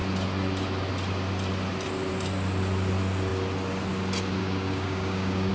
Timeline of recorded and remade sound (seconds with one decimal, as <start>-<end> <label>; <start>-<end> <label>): 0.0-4.4 recorded; 4.4-5.5 remade